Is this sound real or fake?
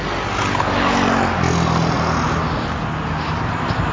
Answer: real